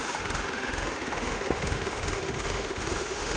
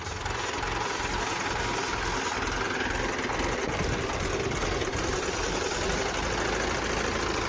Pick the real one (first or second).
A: second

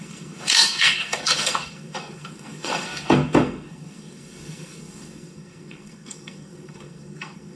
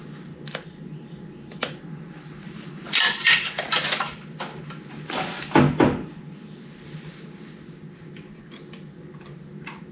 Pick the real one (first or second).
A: second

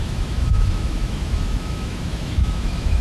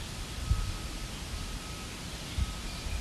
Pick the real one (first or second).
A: second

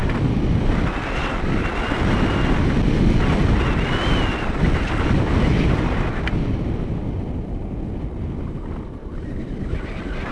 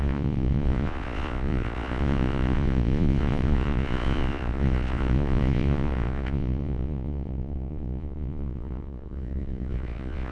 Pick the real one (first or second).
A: first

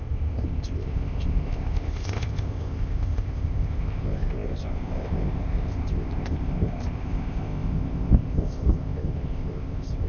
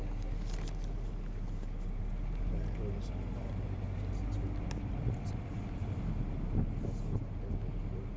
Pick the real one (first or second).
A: second